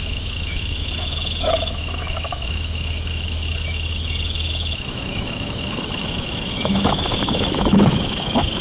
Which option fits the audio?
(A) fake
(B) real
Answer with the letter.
A